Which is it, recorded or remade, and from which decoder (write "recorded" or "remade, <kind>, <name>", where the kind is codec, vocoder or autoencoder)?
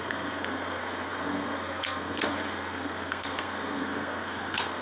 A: remade, codec, SNAC